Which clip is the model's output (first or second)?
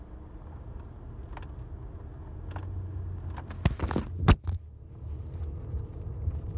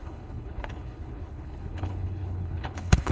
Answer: second